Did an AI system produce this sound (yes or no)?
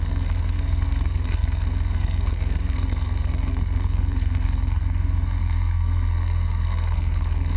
yes